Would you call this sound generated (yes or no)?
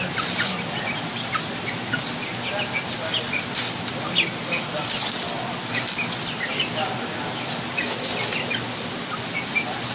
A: no